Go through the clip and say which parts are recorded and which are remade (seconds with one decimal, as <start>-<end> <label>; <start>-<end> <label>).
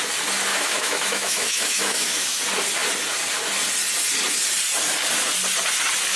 0.0-0.5 recorded; 0.5-2.4 remade; 2.4-6.2 recorded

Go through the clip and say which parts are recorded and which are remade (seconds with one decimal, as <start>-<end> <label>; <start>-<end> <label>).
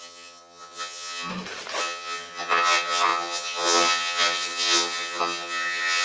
0.0-1.3 remade; 1.3-1.8 recorded; 1.8-6.0 remade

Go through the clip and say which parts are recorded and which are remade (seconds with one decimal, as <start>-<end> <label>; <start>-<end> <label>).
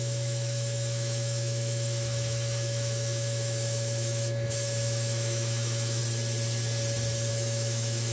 0.0-6.0 remade; 6.0-7.3 recorded; 7.3-8.1 remade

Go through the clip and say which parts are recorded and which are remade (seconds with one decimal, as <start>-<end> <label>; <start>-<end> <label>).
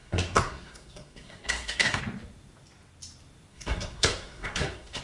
0.0-2.0 remade; 2.0-3.5 recorded; 3.5-5.0 remade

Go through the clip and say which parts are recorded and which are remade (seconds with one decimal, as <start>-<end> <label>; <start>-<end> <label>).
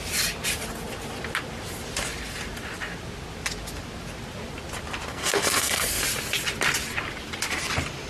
0.0-5.1 recorded; 5.1-6.0 remade; 6.0-8.1 recorded